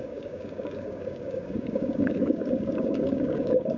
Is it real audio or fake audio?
fake